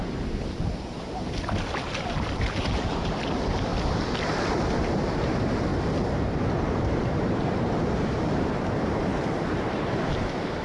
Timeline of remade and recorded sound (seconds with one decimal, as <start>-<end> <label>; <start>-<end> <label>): 0.0-3.7 remade; 3.7-4.8 recorded; 4.8-9.1 remade; 9.1-9.7 recorded; 9.7-10.6 remade

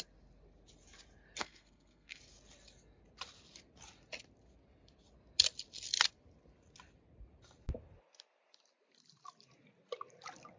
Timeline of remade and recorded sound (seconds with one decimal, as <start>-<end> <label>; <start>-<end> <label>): 0.0-1.4 recorded; 1.4-2.2 remade; 2.2-10.6 recorded